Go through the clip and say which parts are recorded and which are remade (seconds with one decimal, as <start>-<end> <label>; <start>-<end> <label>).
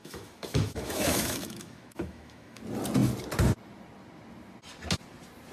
0.0-2.6 remade; 2.6-5.5 recorded